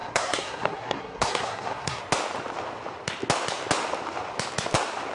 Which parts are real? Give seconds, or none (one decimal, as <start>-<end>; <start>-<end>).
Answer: 2.0-5.1